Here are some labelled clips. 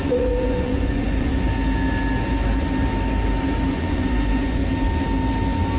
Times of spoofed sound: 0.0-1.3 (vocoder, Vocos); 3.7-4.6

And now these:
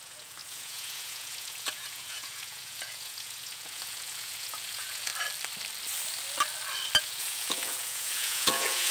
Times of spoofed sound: 0.0-5.1 (vocoder, Vocos); 7.0-8.9

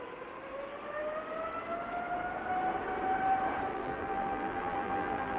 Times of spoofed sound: 3.7-5.4 (vocoder, BigVGAN v2)

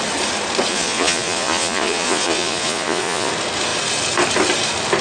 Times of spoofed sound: 0.7-3.3 (vocoder, Vocos)

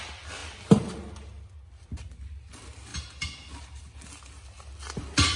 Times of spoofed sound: none

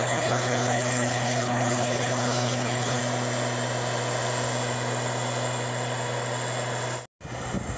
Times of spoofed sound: 0.0-3.0 (codec, HILCodec)

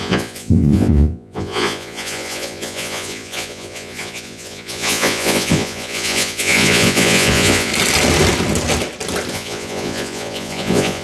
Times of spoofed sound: 0.0-7.7 (vocoder, Vocos); 9.3-11.0

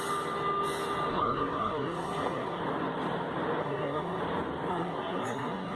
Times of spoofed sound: 1.1-2.6 (codec, SNAC); 3.6-4.2; 4.7-5.8